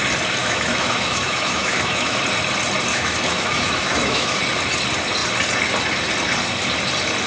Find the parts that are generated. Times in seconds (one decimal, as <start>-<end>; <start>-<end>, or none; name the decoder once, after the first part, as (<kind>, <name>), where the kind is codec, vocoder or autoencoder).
0.4-2.2 (autoencoder, DAC-VAE); 2.9-4.4